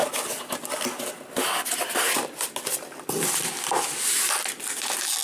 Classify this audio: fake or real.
real